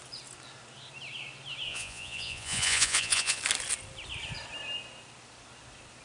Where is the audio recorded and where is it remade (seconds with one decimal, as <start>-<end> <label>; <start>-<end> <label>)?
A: 0.0-1.7 recorded; 1.7-3.4 remade; 3.4-6.0 recorded